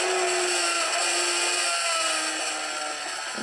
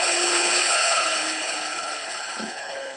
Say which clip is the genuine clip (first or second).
first